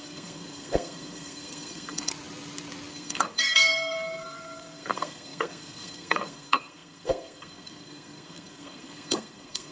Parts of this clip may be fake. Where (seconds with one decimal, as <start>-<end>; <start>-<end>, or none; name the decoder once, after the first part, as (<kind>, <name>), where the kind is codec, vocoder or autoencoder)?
0.0-2.1 (codec, SNAC); 2.9-9.7